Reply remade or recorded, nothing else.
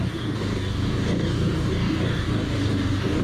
remade